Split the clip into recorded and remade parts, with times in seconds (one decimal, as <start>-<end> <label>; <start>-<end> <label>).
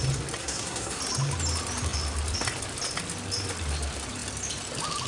0.0-0.4 recorded; 0.4-1.0 remade; 1.0-5.1 recorded